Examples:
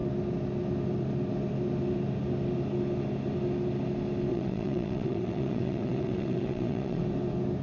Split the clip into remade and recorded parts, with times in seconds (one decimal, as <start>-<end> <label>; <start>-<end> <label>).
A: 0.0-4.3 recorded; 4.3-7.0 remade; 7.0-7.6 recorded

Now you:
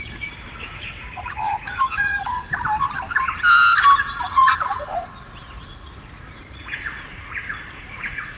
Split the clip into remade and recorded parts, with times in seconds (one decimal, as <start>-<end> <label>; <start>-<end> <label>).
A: 0.0-2.4 remade; 2.4-4.0 recorded; 4.0-8.4 remade

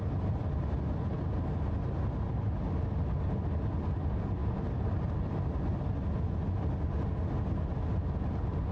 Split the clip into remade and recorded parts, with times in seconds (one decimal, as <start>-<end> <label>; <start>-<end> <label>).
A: 0.0-4.4 recorded; 4.4-5.1 remade; 5.1-8.7 recorded

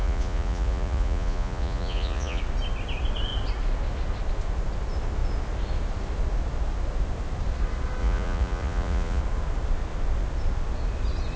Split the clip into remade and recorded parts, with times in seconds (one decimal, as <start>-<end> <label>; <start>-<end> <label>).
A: 0.0-2.4 remade; 2.4-8.0 recorded; 8.0-9.2 remade; 9.2-11.4 recorded

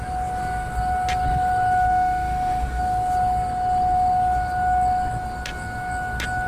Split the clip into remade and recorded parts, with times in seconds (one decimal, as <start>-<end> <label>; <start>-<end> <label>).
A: 0.0-1.9 recorded; 1.9-2.8 remade; 2.8-6.5 recorded

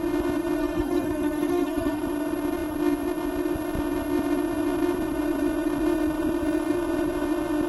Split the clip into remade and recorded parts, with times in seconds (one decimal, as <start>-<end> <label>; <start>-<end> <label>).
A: 0.0-0.6 recorded; 0.6-2.0 remade; 2.0-7.7 recorded